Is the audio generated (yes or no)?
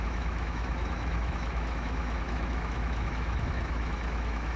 yes